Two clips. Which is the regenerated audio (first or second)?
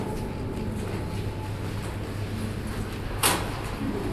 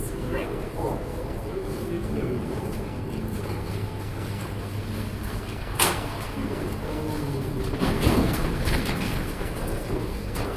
second